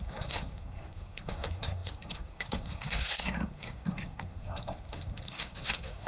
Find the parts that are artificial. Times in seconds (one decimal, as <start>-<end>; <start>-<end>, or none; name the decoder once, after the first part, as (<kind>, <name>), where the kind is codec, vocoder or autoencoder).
0.0-6.1 (codec, SNAC)